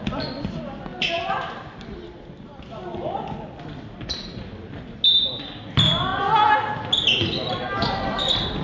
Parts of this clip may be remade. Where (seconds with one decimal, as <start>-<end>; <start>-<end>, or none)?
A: none